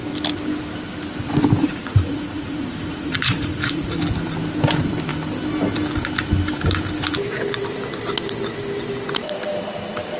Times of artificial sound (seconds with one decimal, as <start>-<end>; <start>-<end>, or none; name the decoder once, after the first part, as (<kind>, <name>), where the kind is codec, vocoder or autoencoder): 1.6-4.0 (vocoder, Vocos)